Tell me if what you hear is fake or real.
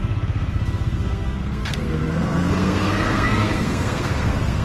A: fake